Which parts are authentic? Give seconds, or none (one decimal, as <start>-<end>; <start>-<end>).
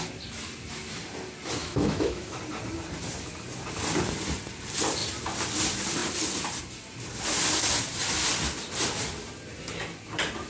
0.0-1.6; 2.4-10.5